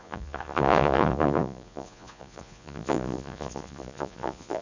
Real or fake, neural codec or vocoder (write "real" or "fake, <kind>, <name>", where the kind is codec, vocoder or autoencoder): fake, vocoder, Vocos